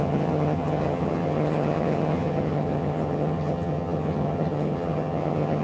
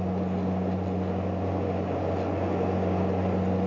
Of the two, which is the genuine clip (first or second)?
second